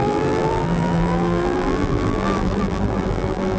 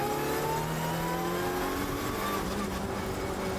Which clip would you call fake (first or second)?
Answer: first